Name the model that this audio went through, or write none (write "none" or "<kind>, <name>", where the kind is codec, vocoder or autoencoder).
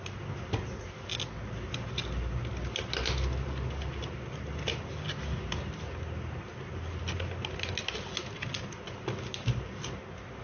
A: none